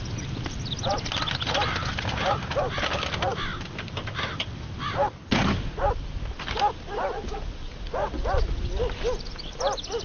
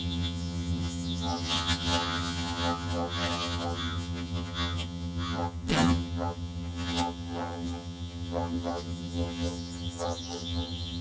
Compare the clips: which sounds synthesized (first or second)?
second